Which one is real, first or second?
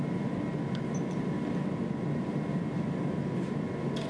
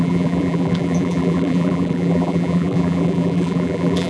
first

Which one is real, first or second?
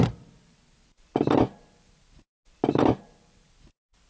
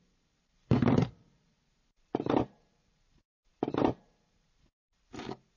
first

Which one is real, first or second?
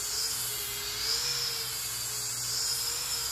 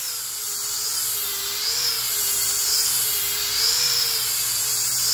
first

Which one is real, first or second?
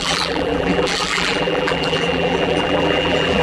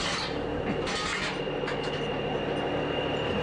second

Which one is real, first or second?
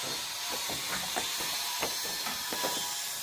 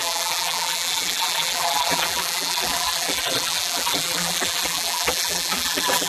first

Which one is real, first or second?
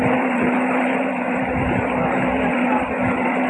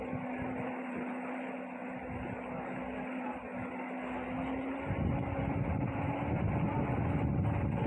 second